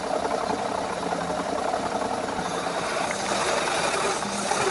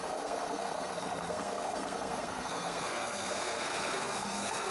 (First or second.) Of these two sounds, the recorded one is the first